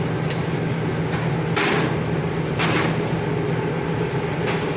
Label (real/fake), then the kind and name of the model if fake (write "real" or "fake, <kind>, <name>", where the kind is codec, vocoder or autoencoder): real